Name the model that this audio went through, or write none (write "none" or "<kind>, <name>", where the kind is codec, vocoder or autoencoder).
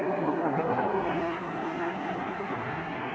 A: codec, SNAC